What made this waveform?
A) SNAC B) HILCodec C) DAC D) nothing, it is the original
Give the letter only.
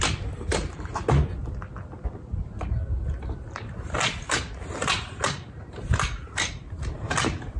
D